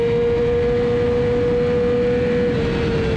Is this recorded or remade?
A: recorded